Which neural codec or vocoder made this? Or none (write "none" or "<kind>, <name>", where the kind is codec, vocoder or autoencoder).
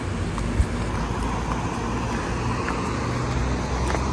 none